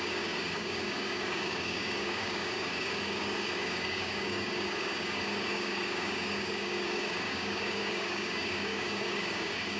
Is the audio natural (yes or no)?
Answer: no